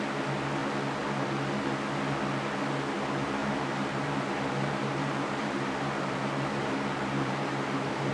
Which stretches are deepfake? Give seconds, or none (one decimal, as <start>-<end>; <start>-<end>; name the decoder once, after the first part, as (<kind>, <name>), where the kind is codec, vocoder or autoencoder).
3.4-8.1 (vocoder, BigVGAN v2)